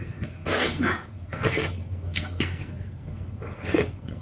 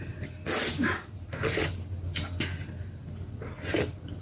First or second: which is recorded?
second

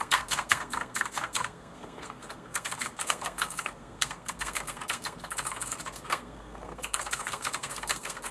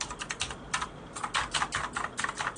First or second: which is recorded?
second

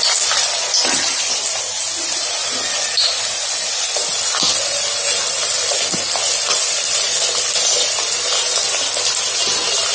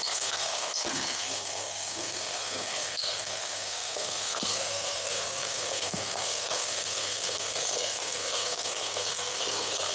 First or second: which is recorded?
first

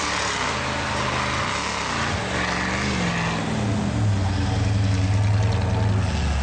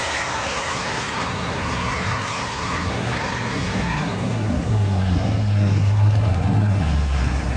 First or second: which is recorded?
first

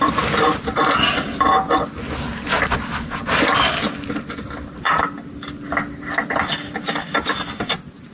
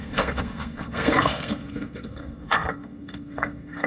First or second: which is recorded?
first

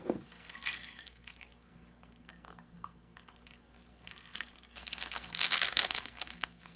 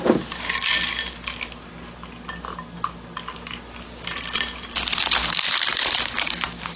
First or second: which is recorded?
second